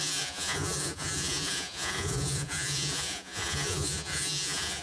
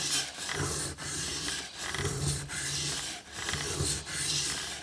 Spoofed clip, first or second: first